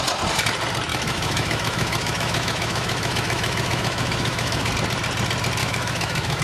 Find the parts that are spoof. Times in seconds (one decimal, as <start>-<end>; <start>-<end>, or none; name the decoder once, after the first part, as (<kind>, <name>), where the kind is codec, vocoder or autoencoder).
0.9-4.7 (autoencoder, DAC-VAE); 5.6-6.4